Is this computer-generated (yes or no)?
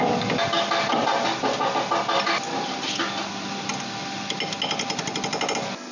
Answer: no